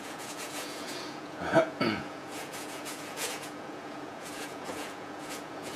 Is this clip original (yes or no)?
no